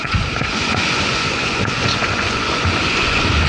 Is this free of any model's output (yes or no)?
no